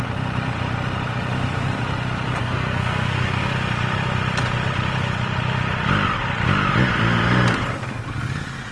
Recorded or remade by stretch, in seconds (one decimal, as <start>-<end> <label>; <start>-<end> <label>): 0.0-2.4 recorded; 2.4-3.4 remade; 3.4-8.7 recorded